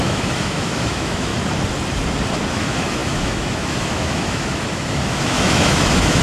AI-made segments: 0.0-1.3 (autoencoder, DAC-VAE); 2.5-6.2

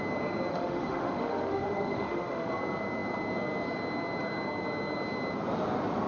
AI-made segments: 0.5-2.5 (autoencoder, DAC-VAE)

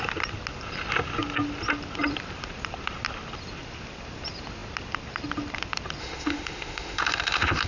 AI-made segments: 6.0-7.7 (autoencoder, DAC-VAE)

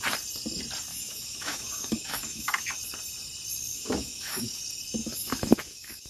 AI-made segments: 0.9-2.8 (autoencoder, DAC-VAE); 3.7-4.6; 5.0-6.1

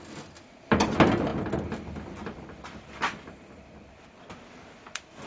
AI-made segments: none

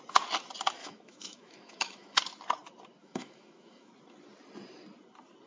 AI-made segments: 0.8-2.2 (autoencoder, DAC-VAE); 3.0-3.9

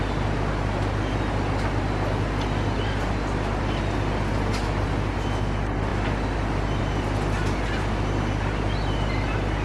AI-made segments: none